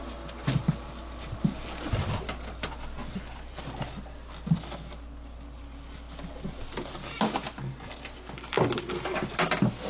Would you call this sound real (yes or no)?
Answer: yes